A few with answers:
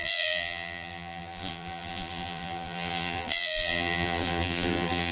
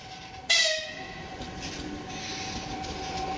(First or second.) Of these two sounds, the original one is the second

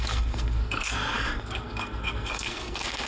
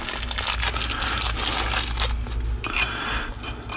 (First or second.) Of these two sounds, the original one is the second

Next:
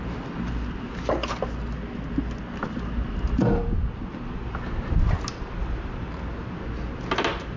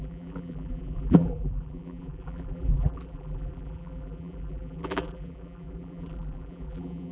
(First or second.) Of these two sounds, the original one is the first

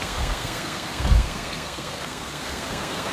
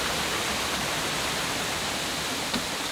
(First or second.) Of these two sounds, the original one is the second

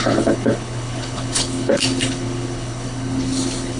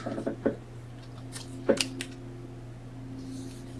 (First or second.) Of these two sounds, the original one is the second